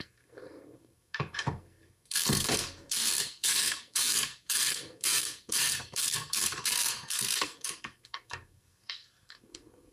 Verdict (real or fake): fake